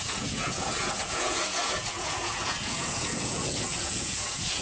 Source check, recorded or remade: remade